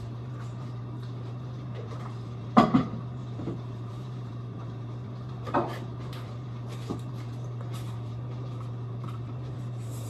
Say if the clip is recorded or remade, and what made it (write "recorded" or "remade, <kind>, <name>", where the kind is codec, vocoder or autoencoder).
remade, vocoder, BigVGAN v2